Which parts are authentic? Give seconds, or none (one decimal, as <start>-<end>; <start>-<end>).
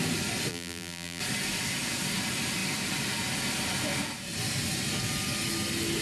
0.0-0.5; 1.2-6.0